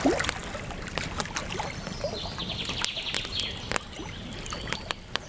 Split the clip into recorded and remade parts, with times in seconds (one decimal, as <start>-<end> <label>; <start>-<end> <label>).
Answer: 0.0-5.3 recorded